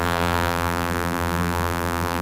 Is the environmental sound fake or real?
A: fake